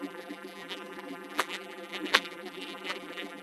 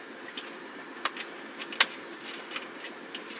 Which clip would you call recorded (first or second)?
second